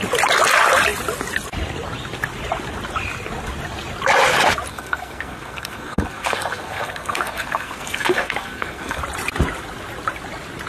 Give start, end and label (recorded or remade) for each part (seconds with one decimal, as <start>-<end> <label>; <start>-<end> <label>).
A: 0.0-4.7 recorded; 4.7-9.0 remade; 9.0-10.7 recorded

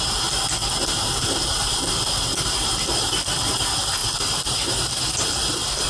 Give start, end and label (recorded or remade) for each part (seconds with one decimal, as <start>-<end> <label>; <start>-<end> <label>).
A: 0.0-5.9 recorded

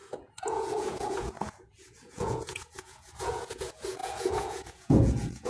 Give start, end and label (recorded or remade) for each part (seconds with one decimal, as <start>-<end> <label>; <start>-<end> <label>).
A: 0.0-5.5 remade

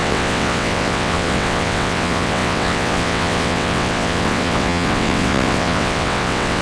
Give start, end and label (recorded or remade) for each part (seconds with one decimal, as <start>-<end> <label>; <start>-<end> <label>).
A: 0.0-6.6 remade

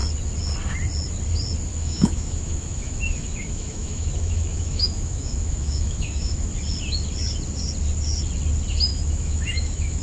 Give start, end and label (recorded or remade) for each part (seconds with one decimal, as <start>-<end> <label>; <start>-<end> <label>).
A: 0.0-1.7 recorded; 1.7-6.5 remade; 6.5-8.9 recorded; 8.9-10.0 remade